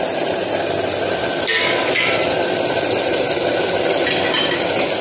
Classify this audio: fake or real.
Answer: real